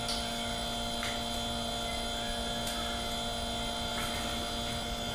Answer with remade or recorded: recorded